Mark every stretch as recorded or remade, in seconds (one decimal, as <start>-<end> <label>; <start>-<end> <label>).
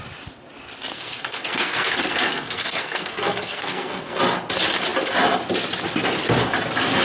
0.0-0.9 recorded; 0.9-4.2 remade; 4.2-7.0 recorded